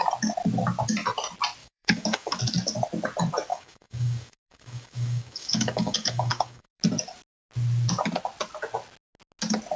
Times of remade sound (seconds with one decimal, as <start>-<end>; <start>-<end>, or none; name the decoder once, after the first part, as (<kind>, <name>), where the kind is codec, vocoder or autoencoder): 1.6-2.4 (codec, DAC); 3.5-6.8